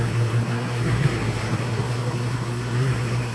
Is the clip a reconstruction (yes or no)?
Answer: yes